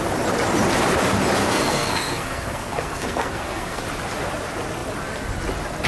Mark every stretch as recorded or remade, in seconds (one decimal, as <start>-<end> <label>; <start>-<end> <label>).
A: 0.0-1.4 recorded; 1.4-3.8 remade; 3.8-5.9 recorded